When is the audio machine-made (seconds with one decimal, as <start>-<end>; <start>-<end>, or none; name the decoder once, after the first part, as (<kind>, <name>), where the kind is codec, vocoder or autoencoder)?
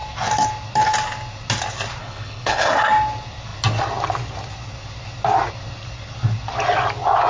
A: 2.0-2.7 (codec, HILCodec)